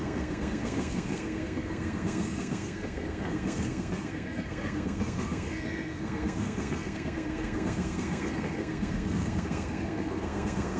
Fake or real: fake